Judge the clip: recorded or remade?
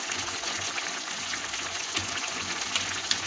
remade